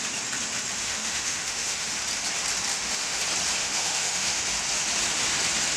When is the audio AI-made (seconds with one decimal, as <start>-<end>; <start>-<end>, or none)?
0.8-2.0; 2.7-3.2; 3.6-4.4